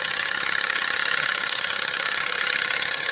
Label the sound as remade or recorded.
remade